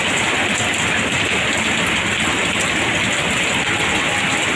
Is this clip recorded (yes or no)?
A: yes